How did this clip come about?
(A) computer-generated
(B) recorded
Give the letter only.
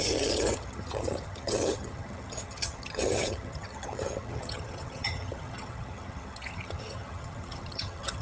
A